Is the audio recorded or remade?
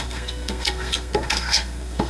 remade